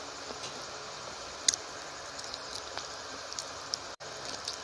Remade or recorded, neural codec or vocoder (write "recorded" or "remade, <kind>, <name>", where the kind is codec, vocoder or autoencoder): recorded